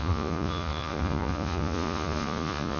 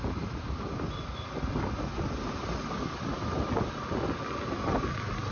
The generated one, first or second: first